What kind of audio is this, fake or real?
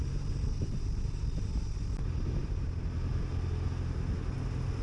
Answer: real